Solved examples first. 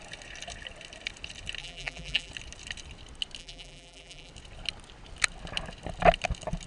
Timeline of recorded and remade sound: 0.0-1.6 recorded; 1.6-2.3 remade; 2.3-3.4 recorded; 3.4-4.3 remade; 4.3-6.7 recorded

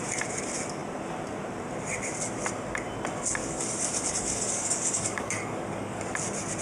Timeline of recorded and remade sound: 0.0-3.4 recorded; 3.4-6.0 remade; 6.0-6.6 recorded

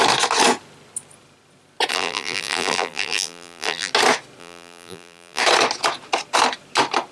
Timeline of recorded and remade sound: 0.0-1.9 recorded; 1.9-3.9 remade; 3.9-4.4 recorded; 4.4-5.4 remade; 5.4-7.1 recorded

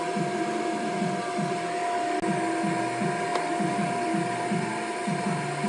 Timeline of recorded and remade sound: 0.0-5.7 recorded

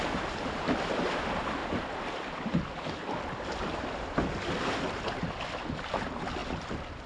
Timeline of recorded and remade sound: 0.0-1.6 recorded; 1.6-5.2 remade; 5.2-7.1 recorded

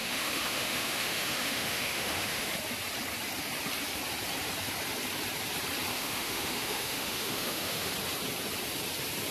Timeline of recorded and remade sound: 0.0-2.5 remade; 2.5-5.9 recorded; 5.9-7.9 remade; 7.9-9.3 recorded

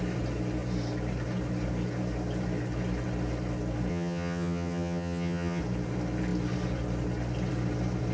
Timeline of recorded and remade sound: 0.0-3.9 recorded; 3.9-5.6 remade; 5.6-8.1 recorded

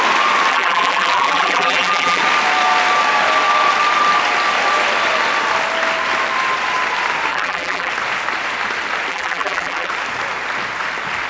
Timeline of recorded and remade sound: 0.0-0.5 recorded; 0.5-2.2 remade; 2.2-7.3 recorded; 7.3-7.9 remade; 7.9-9.1 recorded; 9.1-9.9 remade; 9.9-11.3 recorded